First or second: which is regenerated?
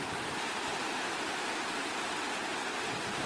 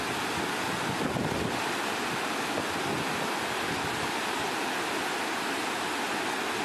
first